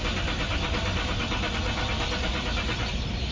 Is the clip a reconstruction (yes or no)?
no